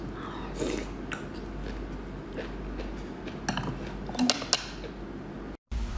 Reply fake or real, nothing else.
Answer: real